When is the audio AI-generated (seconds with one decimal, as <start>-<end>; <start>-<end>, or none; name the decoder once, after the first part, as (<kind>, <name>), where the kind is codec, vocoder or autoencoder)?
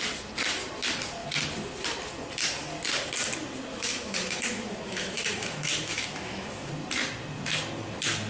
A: 3.7-6.7 (autoencoder, DAC-VAE)